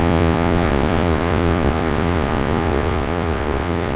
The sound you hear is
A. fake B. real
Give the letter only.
A